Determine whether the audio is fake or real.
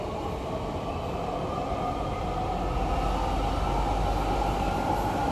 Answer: real